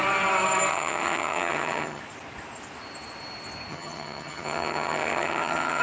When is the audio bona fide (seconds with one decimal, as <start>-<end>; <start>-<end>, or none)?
0.0-0.7; 2.0-3.7